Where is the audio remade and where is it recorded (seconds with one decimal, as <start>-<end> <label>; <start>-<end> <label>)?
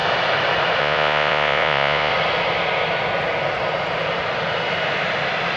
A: 0.0-0.8 recorded; 0.8-2.1 remade; 2.1-5.6 recorded